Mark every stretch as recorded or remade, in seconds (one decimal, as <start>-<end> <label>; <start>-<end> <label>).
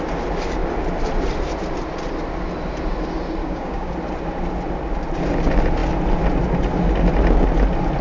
0.0-3.4 recorded; 3.4-3.9 remade; 3.9-8.0 recorded